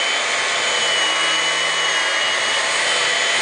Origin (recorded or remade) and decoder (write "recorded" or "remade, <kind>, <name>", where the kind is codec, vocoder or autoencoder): recorded